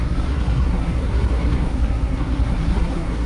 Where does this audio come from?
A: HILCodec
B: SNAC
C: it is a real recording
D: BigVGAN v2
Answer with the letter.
B